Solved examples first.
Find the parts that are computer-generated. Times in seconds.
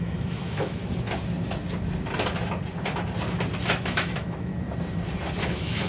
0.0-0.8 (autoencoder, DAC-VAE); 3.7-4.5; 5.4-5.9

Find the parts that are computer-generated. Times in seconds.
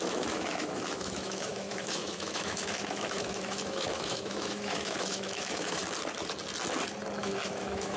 0.0-5.8 (autoencoder, DAC-VAE); 7.2-8.0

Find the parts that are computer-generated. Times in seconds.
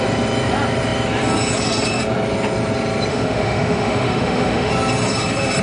3.1-4.7 (autoencoder, DAC-VAE)